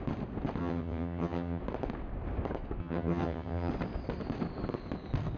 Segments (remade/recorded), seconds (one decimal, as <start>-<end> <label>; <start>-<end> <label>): 0.0-0.6 recorded; 0.6-1.6 remade; 1.6-2.8 recorded; 2.8-3.7 remade; 3.7-5.4 recorded

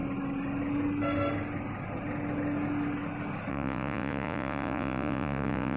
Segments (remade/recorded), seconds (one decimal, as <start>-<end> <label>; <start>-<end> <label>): 0.0-3.5 recorded; 3.5-5.8 remade

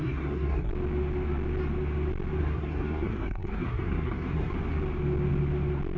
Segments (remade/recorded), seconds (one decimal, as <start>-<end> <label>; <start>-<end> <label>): 0.0-0.7 remade; 0.7-2.4 recorded; 2.4-4.5 remade; 4.5-6.0 recorded

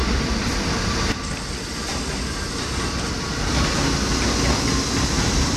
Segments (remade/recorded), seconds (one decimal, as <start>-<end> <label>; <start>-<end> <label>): 0.0-5.6 recorded